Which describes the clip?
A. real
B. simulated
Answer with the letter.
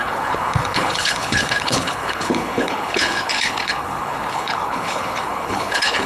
B